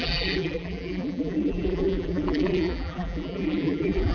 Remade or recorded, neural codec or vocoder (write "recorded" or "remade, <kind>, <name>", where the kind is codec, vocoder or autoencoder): remade, vocoder, BigVGAN v2